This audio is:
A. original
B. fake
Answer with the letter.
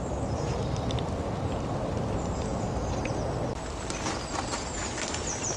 A